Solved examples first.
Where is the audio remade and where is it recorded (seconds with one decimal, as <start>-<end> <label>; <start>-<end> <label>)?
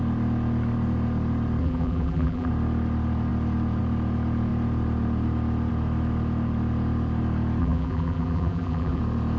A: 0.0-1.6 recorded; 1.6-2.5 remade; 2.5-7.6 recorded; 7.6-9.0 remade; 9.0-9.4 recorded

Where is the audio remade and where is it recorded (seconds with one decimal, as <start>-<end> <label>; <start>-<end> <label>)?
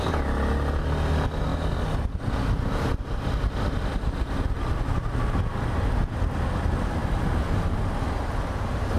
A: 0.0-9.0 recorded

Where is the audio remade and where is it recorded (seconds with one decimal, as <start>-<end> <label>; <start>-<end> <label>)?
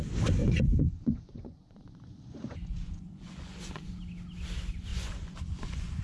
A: 0.0-0.4 recorded; 0.4-4.0 remade; 4.0-4.9 recorded; 4.9-6.0 remade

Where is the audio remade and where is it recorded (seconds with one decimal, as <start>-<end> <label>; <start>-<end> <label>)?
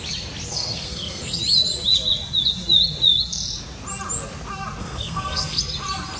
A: 0.0-0.5 recorded; 0.5-1.4 remade; 1.4-4.8 recorded; 4.8-5.6 remade; 5.6-6.2 recorded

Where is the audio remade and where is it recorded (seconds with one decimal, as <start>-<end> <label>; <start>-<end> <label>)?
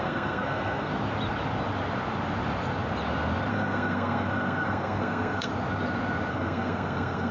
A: 0.0-0.9 remade; 0.9-3.5 recorded; 3.5-5.5 remade; 5.5-6.3 recorded; 6.3-7.3 remade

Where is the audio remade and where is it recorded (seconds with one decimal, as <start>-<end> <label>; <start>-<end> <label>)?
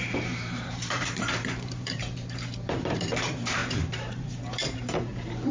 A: 0.0-5.5 remade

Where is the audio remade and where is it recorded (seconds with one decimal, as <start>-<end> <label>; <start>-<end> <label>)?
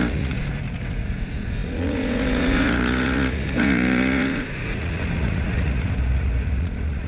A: 0.0-7.1 remade